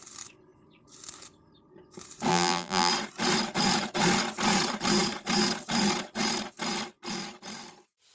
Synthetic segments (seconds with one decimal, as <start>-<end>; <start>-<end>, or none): 2.3-2.9